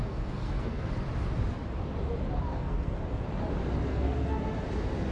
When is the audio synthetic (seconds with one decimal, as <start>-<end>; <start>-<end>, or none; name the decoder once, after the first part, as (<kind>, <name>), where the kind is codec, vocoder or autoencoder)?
0.0-0.9 (codec, SNAC); 2.5-3.0; 3.9-4.4